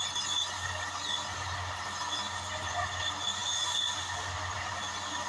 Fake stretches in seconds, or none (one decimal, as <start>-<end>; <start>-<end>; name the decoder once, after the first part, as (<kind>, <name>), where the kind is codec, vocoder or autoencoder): none